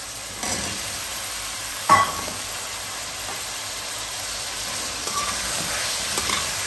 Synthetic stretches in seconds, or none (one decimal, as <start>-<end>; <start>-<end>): 1.7-2.5; 5.0-5.7